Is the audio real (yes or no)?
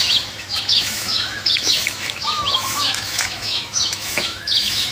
no